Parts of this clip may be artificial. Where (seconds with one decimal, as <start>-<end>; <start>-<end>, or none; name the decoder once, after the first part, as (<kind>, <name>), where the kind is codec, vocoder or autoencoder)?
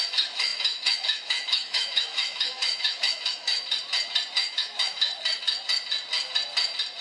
0.0-3.5 (autoencoder, DAC-VAE); 4.5-5.1